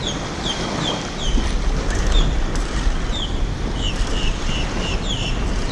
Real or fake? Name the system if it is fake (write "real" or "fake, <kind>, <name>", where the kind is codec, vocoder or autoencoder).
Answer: real